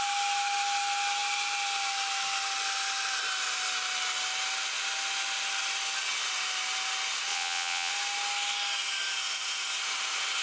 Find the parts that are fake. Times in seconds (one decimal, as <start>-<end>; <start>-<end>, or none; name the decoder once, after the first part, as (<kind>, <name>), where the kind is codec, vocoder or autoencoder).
7.3-7.9 (vocoder, WaveNeXt)